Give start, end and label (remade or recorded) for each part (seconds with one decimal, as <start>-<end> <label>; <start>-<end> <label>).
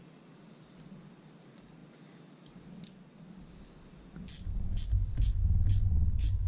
0.0-6.5 recorded